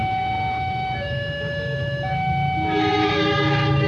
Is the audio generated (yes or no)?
yes